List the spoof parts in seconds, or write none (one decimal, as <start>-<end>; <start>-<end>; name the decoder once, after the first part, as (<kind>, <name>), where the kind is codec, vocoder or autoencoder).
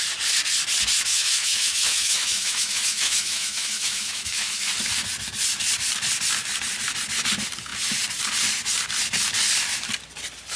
1.1-4.7 (autoencoder, DAC-VAE)